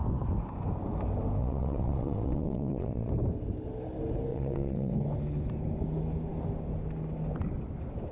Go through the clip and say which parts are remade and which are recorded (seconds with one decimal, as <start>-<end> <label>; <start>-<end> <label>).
0.0-1.4 recorded; 1.4-3.1 remade; 3.1-4.3 recorded; 4.3-4.9 remade; 4.9-8.1 recorded